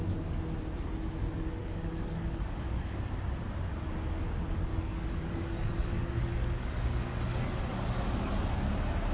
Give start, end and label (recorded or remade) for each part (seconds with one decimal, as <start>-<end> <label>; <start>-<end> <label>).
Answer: 0.0-1.6 recorded; 1.6-3.1 remade; 3.1-4.7 recorded; 4.7-8.5 remade; 8.5-9.1 recorded